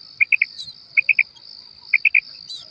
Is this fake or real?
real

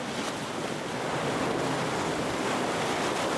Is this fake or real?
real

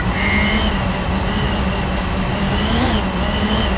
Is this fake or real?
real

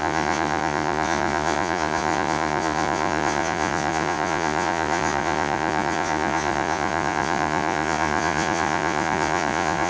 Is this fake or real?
fake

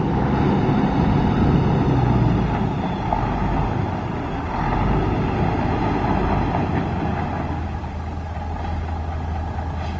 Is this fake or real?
real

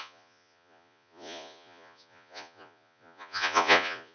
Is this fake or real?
fake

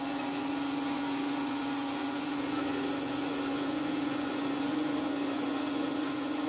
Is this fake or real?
fake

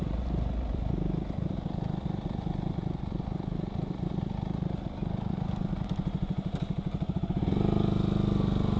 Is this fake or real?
real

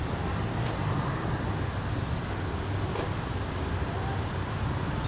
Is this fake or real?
real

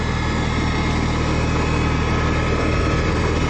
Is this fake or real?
real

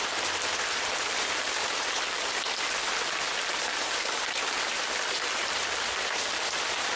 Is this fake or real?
real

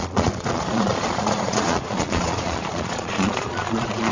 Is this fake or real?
fake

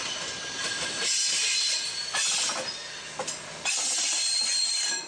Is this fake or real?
real